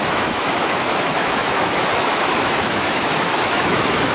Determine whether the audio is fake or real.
fake